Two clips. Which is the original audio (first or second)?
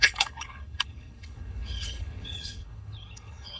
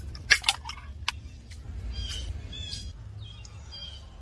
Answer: second